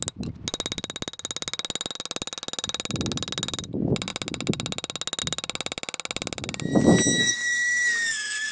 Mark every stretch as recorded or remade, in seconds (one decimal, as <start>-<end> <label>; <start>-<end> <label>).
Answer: 0.0-7.2 recorded; 7.2-8.5 remade